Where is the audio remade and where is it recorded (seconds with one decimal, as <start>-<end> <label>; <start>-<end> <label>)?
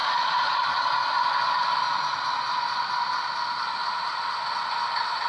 0.0-0.8 remade; 0.8-5.3 recorded